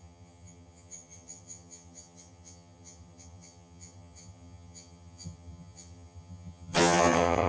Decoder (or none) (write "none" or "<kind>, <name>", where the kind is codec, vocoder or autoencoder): vocoder, HiFi-GAN